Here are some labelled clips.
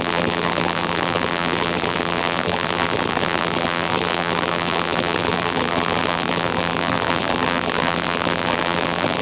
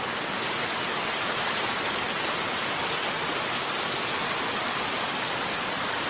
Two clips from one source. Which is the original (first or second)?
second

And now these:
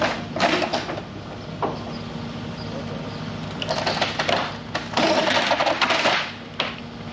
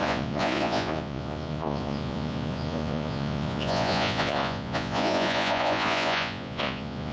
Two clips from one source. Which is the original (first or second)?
first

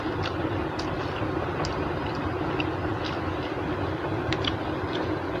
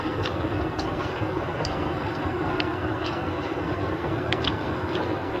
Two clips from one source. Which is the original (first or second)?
first